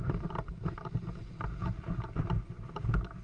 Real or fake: real